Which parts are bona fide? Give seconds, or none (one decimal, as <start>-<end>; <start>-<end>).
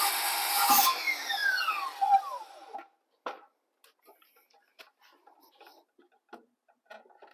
0.0-7.3